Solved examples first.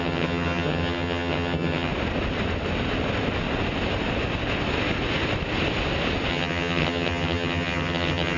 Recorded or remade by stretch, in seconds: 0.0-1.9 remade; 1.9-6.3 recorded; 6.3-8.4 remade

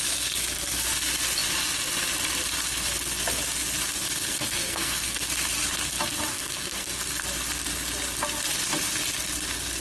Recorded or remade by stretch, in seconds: 0.0-4.2 recorded; 4.2-5.3 remade; 5.3-6.3 recorded; 6.3-7.2 remade; 7.2-9.8 recorded

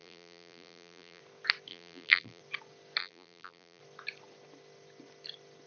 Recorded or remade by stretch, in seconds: 0.0-1.2 remade; 1.2-1.7 recorded; 1.7-2.4 remade; 2.4-3.0 recorded; 3.0-3.8 remade; 3.8-5.7 recorded

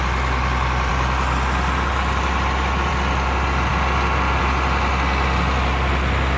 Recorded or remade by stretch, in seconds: 0.0-6.4 recorded